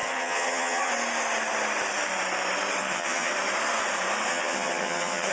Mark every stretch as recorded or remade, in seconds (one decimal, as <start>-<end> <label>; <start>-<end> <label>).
0.0-0.9 remade; 0.9-2.8 recorded; 2.8-3.3 remade; 3.3-4.3 recorded; 4.3-5.3 remade